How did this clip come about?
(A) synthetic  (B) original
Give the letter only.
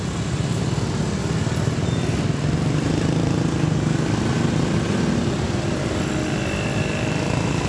B